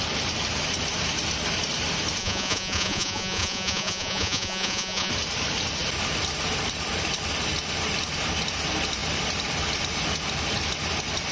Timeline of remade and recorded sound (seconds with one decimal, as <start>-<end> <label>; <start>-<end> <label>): 0.0-2.2 recorded; 2.2-5.1 remade; 5.1-11.3 recorded